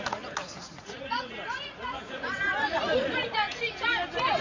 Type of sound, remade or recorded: remade